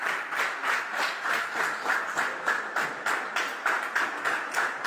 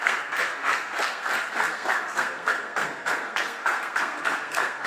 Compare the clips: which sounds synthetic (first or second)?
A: second